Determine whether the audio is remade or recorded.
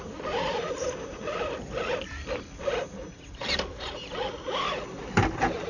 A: recorded